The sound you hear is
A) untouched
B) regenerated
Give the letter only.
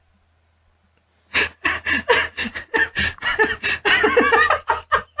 A